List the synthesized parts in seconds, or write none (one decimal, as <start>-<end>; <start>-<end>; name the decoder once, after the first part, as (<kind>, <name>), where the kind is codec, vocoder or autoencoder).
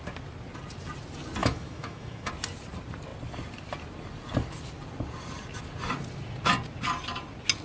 1.4-2.3 (autoencoder, DAC-VAE)